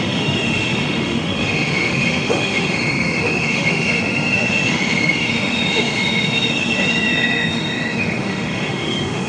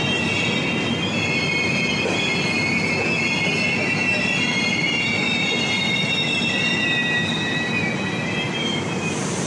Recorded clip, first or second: second